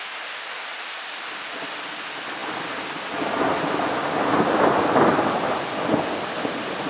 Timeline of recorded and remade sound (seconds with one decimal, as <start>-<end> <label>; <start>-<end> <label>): 0.0-6.9 recorded